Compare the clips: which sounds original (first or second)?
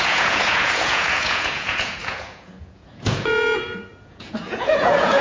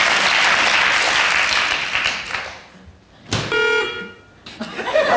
second